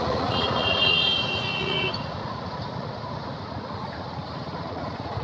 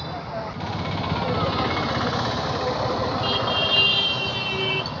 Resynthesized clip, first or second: first